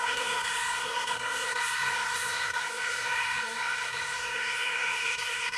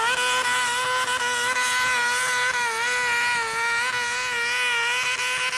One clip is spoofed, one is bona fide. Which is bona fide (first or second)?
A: second